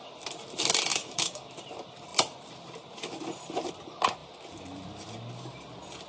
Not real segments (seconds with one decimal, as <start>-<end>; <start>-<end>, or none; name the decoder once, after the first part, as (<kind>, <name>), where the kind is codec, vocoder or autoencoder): 0.9-1.5 (codec, DAC)